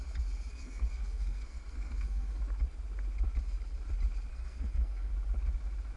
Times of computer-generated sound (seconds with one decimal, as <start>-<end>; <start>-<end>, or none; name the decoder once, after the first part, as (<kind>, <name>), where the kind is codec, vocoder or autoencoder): 0.5-2.4 (codec, SNAC); 4.3-5.1